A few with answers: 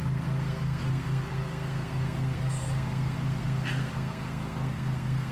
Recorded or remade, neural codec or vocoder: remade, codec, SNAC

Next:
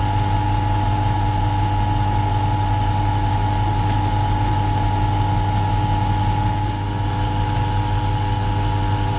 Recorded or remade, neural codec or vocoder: recorded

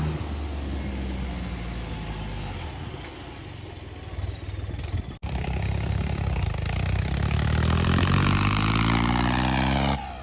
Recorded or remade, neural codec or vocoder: recorded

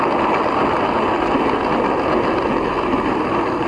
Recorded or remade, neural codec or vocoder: recorded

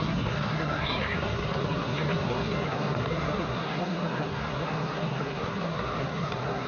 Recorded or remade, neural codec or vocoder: remade, codec, SNAC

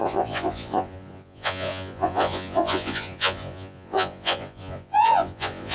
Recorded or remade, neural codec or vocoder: remade, vocoder, Vocos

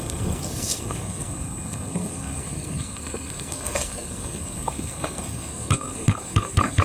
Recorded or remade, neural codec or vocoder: remade, codec, SNAC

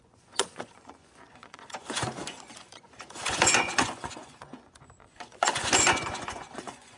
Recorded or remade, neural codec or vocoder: remade, vocoder, Vocos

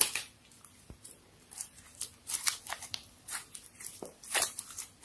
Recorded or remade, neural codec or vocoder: remade, vocoder, BigVGAN v2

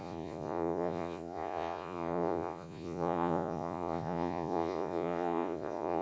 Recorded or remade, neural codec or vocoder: remade, vocoder, Vocos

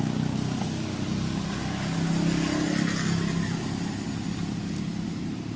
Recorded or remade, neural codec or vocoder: recorded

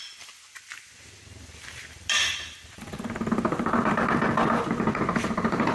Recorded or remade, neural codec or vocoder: recorded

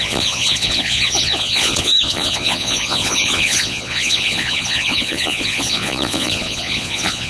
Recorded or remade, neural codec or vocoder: remade, vocoder, Vocos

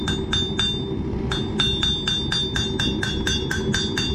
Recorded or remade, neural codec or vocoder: recorded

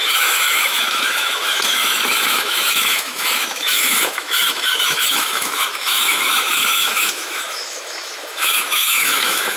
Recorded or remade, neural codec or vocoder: remade, autoencoder, DAC-VAE